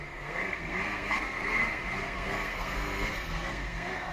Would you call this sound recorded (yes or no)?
no